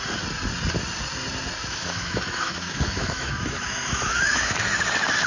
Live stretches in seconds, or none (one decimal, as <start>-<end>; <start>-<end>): 0.0-1.6; 4.7-5.3